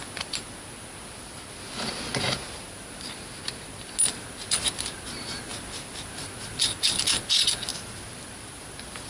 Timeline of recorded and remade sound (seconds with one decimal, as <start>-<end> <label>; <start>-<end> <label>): 0.0-7.7 recorded; 7.7-9.1 remade